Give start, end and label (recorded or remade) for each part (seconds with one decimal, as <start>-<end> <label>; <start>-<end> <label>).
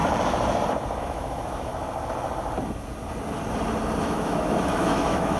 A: 0.0-1.0 recorded; 1.0-1.7 remade; 1.7-4.0 recorded; 4.0-5.4 remade